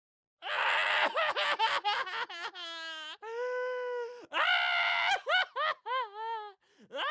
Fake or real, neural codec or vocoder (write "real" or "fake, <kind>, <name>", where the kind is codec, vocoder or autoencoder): real